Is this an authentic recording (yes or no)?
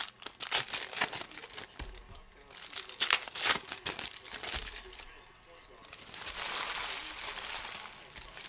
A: yes